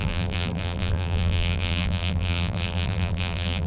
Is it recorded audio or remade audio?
remade